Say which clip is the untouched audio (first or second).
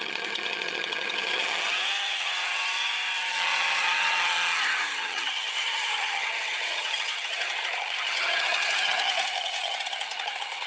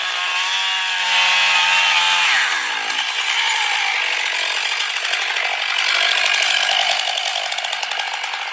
second